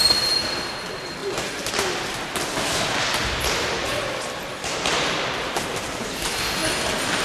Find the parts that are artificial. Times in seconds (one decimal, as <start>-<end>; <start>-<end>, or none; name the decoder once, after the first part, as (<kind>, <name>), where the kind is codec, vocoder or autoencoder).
0.0-1.2 (vocoder, BigVGAN v2); 4.6-6.6